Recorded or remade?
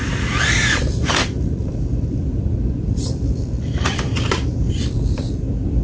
remade